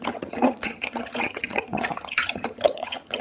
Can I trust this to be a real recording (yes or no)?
no